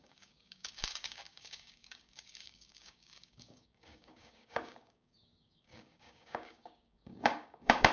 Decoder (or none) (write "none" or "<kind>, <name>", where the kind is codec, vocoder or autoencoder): codec, DAC